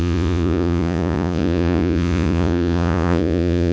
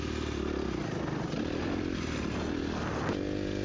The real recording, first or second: second